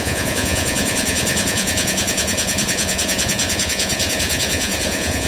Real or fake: fake